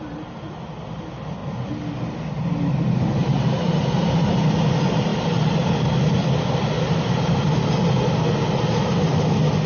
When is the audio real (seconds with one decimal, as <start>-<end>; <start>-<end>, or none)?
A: 0.0-3.2; 3.8-5.1; 6.0-9.7